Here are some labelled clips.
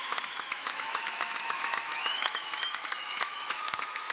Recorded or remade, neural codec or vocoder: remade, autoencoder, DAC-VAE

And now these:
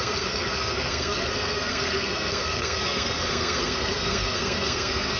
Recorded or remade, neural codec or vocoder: remade, codec, SNAC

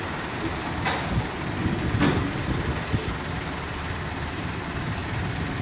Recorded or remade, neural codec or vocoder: recorded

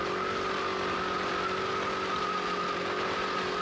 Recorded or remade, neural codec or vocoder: recorded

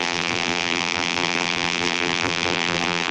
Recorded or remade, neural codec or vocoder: remade, vocoder, BigVGAN v2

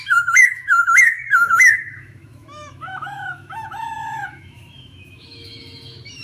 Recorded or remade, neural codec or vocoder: remade, autoencoder, DAC-VAE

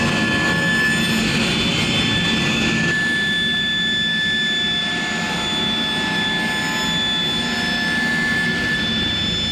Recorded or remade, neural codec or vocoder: recorded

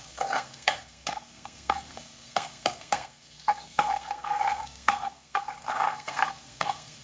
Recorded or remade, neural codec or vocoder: remade, codec, SNAC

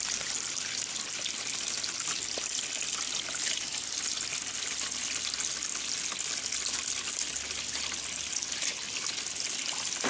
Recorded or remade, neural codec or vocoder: recorded